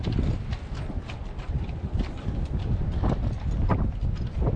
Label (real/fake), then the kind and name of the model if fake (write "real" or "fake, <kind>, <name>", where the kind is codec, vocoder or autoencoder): real